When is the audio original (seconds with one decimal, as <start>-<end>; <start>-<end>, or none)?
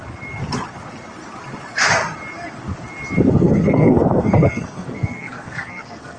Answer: 0.0-3.3